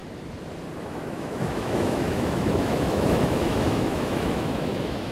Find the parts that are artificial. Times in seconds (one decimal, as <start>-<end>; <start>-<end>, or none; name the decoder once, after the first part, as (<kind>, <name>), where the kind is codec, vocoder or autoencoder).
0.8-5.1 (autoencoder, DAC-VAE)